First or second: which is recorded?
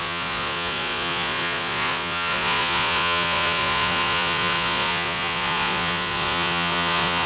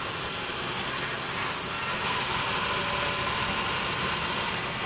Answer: second